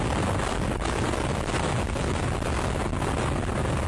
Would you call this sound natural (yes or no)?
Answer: yes